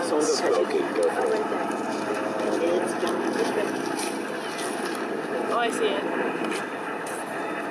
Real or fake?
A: real